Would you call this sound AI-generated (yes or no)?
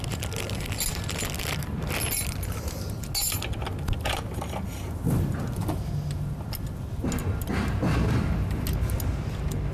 no